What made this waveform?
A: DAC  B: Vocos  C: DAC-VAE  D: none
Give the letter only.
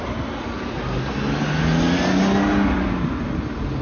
D